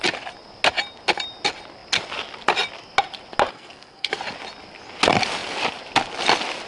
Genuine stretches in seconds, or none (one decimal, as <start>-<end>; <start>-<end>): 0.0-3.5; 4.1-6.7